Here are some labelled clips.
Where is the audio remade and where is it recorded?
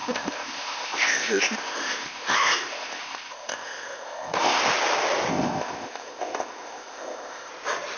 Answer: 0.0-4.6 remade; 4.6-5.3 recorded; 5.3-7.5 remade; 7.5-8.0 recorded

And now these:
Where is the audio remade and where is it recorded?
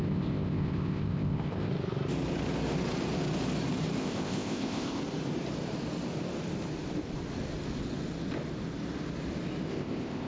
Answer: 0.0-1.7 remade; 1.7-4.0 recorded; 4.0-5.0 remade; 5.0-9.7 recorded; 9.7-10.3 remade